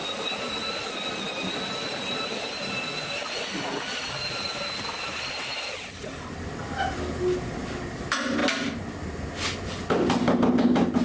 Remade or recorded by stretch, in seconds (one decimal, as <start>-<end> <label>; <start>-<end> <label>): 0.0-11.0 recorded